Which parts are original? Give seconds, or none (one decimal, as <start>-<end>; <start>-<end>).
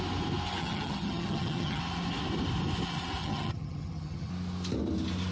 0.0-0.6; 1.8-3.2; 4.3-5.3